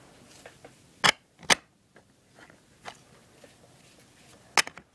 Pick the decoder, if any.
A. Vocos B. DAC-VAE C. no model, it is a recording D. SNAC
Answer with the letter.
C